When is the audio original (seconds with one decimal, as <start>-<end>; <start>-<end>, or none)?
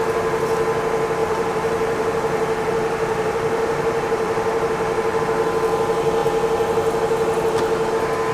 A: 0.0-1.2; 5.2-8.3